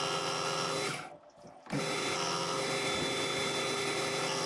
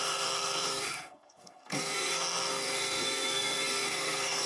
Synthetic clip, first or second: second